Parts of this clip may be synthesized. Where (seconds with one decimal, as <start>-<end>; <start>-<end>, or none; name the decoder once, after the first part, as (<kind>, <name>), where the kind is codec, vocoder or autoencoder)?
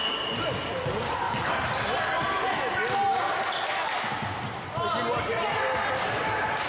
none